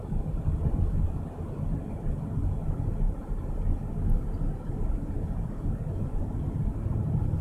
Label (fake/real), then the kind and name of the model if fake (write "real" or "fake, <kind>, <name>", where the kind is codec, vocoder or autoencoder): real